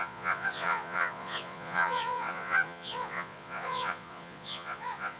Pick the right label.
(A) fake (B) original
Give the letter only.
A